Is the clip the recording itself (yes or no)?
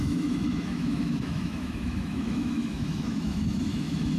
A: no